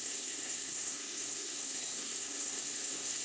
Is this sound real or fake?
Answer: fake